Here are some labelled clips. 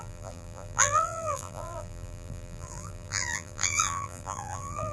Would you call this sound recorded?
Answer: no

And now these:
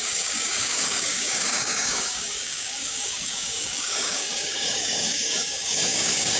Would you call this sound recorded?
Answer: no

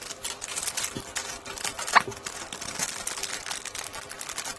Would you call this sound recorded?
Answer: yes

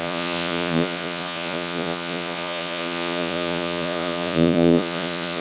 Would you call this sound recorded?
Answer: no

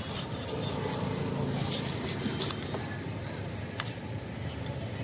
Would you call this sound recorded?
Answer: yes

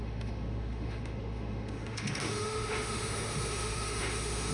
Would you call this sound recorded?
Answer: no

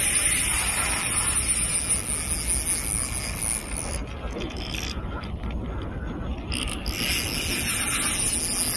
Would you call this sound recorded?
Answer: yes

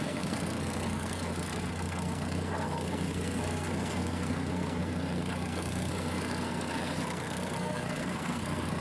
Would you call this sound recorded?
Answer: no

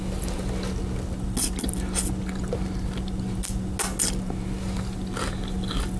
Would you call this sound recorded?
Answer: yes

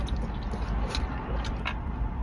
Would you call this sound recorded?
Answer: yes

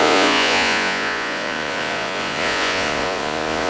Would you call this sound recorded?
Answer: no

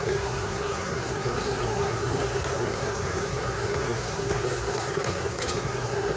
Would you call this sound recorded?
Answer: no